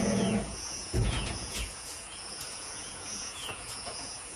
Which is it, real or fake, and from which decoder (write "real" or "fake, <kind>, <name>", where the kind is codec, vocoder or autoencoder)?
fake, vocoder, Vocos